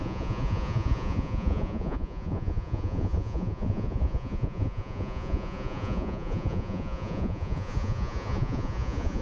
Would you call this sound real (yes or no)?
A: no